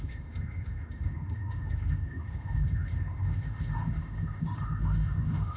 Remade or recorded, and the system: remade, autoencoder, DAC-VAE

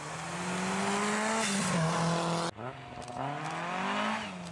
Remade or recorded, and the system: recorded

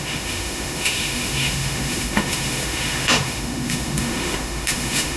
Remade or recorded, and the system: remade, autoencoder, DAC-VAE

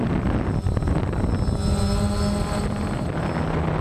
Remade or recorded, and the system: recorded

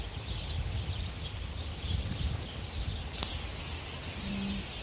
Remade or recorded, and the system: recorded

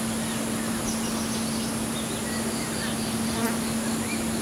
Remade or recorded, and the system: recorded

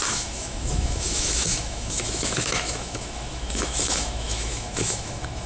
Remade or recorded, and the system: remade, autoencoder, DAC-VAE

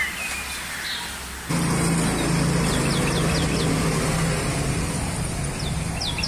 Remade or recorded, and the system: recorded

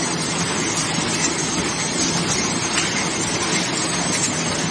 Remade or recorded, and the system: recorded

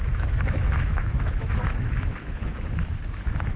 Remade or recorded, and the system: remade, autoencoder, DAC-VAE